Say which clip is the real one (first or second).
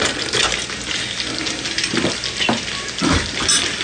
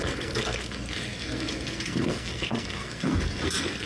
first